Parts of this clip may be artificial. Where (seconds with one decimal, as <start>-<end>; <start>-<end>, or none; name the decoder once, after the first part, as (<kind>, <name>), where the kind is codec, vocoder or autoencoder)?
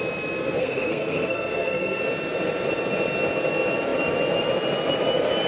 0.6-2.0 (codec, SNAC)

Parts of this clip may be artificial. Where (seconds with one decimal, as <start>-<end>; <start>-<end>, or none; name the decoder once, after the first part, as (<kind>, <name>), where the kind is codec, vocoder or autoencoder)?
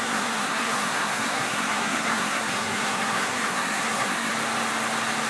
0.0-4.3 (codec, SNAC)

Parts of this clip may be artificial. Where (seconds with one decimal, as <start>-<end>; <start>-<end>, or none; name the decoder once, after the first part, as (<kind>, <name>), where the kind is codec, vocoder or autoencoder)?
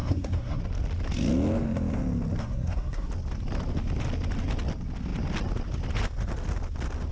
0.0-0.6 (codec, SNAC); 2.4-3.1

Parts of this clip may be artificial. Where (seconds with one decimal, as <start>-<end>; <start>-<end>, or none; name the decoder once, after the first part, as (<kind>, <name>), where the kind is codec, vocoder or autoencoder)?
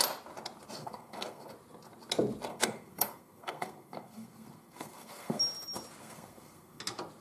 0.8-1.5 (codec, SNAC); 2.5-5.4; 6.0-6.8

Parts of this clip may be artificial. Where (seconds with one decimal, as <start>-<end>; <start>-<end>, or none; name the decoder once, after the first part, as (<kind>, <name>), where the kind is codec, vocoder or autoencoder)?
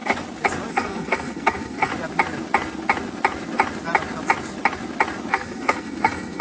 0.7-1.9 (codec, SNAC); 5.3-6.4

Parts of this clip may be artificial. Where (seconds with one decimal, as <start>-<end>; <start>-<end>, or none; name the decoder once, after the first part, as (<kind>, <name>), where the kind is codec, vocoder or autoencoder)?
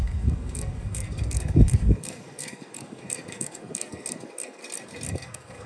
0.0-4.6 (codec, SNAC); 5.1-5.7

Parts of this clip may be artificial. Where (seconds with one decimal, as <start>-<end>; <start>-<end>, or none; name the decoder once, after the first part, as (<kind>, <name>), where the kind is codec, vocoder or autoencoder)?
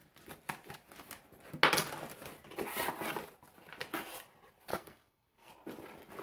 4.7-5.5 (codec, SNAC)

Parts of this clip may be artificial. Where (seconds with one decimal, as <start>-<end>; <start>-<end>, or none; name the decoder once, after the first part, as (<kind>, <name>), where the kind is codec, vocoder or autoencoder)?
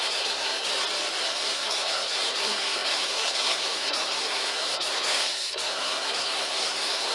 0.0-0.7 (codec, SNAC); 1.2-7.1